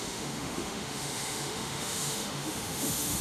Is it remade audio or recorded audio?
remade